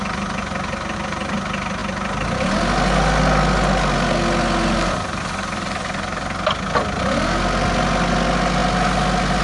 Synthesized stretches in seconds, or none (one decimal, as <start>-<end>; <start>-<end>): none